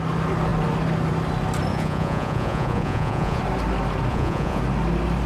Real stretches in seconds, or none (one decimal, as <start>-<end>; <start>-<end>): 0.0-1.7; 3.4-4.1; 4.6-5.3